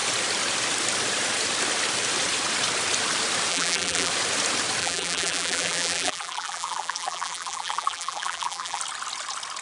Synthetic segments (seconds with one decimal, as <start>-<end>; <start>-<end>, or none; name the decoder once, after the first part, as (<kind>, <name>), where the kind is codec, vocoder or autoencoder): 3.5-4.1 (vocoder, BigVGAN v2); 4.8-8.8